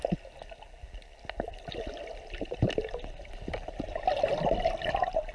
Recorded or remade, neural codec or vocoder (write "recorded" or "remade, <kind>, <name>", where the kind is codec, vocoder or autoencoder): recorded